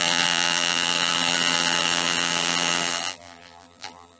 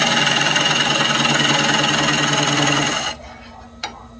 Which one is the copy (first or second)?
first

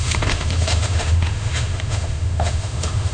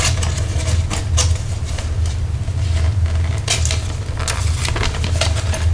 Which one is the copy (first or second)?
first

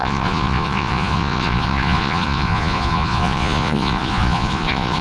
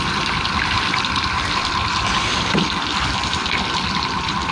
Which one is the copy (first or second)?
first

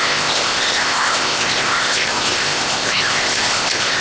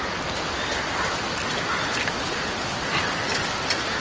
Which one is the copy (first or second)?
first